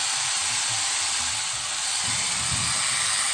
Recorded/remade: recorded